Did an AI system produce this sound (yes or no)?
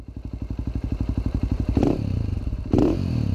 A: yes